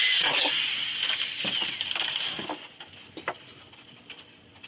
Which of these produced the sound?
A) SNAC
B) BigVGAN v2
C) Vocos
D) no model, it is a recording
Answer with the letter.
D